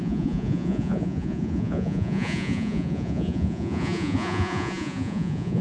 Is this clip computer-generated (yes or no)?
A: yes